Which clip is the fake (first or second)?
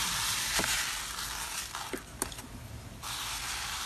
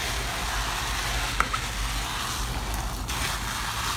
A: first